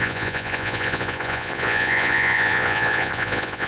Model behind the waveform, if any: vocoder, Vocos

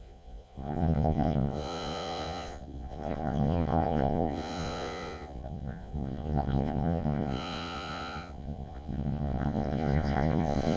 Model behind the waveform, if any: vocoder, Vocos